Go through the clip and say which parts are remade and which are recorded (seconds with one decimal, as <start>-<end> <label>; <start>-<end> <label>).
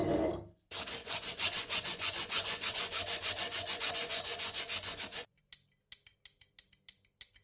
0.0-1.0 recorded; 1.0-5.4 remade; 5.4-7.4 recorded